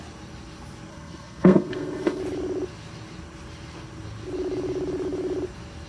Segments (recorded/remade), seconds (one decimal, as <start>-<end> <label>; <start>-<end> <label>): 0.0-0.9 recorded; 0.9-2.2 remade; 2.2-5.9 recorded